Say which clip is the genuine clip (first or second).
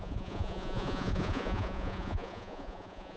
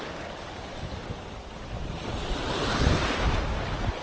second